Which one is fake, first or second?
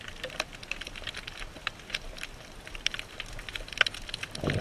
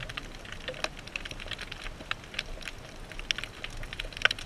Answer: first